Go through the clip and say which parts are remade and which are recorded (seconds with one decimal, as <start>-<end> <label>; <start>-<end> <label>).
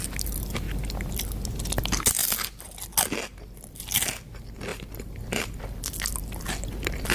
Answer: 0.0-4.7 recorded; 4.7-5.8 remade; 5.8-7.1 recorded